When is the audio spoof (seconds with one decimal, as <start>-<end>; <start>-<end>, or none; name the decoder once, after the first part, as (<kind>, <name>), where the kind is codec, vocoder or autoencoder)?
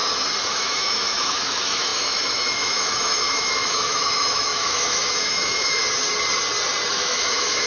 0.5-5.8 (autoencoder, DAC-VAE); 6.9-7.7